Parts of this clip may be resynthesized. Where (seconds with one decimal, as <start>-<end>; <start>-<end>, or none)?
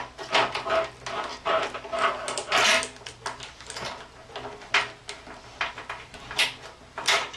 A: none